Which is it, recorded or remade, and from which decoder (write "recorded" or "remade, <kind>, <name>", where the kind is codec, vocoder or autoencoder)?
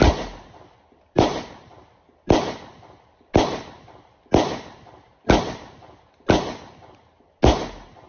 recorded